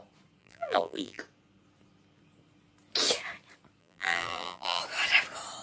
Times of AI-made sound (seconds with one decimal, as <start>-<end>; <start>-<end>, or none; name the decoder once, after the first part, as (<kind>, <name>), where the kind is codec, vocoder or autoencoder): 0.4-1.2 (vocoder, BigVGAN v2); 3.8-4.8